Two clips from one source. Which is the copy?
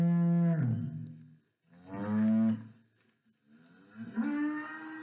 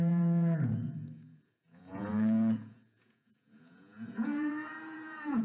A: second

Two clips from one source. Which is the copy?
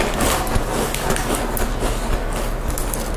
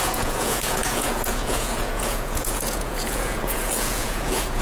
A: second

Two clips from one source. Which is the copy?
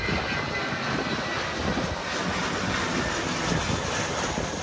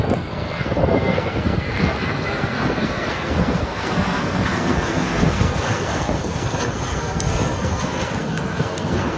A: second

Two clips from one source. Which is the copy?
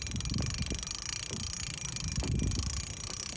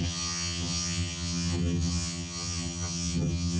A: second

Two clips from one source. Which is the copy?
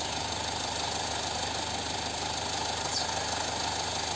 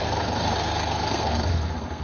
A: second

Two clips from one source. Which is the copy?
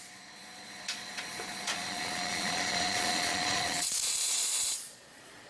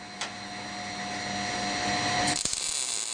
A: first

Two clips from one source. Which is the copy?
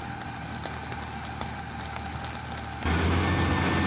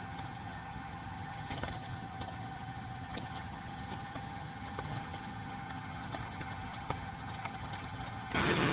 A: second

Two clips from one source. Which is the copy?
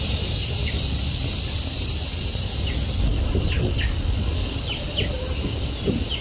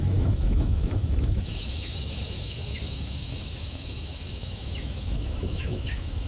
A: second